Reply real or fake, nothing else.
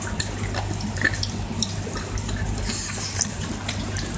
real